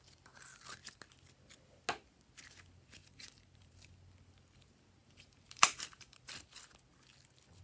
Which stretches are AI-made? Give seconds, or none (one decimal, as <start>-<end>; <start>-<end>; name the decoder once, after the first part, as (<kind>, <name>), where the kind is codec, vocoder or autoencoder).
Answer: 3.0-3.9 (vocoder, BigVGAN v2); 5.0-6.3